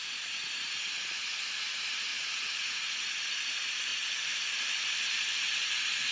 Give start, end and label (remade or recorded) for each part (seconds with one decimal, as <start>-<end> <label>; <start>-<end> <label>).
0.0-2.1 recorded; 2.1-3.1 remade; 3.1-6.1 recorded